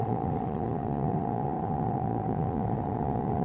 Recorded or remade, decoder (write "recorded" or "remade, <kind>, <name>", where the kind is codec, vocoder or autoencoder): remade, vocoder, Vocos